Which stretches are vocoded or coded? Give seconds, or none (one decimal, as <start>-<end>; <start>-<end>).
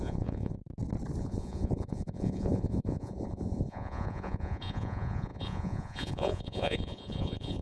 0.0-0.6; 1.2-7.6